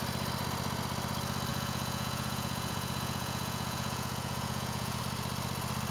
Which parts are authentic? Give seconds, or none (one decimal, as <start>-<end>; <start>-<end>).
0.0-1.5; 5.0-5.9